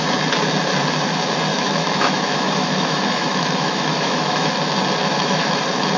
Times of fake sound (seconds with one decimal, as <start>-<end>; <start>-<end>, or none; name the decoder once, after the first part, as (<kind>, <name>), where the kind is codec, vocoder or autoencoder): 1.5-4.5 (autoencoder, DAC-VAE); 5.0-5.6